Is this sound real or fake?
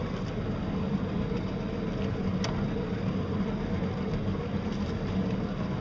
real